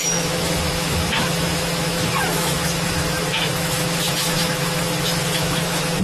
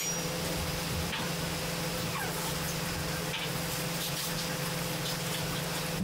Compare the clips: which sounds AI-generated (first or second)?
first